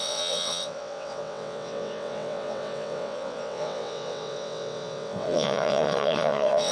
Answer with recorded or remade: remade